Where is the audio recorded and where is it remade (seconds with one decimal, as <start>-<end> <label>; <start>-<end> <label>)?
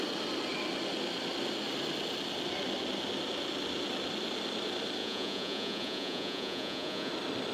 0.0-5.0 recorded; 5.0-7.1 remade; 7.1-7.5 recorded